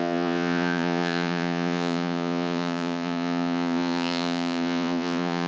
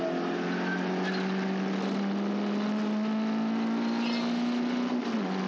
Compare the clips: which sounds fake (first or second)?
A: first